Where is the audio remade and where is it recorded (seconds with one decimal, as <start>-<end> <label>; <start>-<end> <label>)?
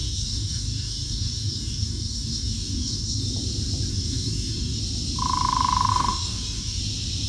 0.0-3.2 remade; 3.2-3.9 recorded; 3.9-4.8 remade; 4.8-5.9 recorded; 5.9-6.8 remade; 6.8-7.3 recorded